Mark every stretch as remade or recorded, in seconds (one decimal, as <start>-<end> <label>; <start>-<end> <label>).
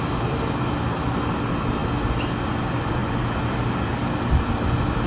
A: 0.0-5.1 recorded